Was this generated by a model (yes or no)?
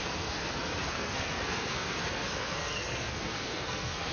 yes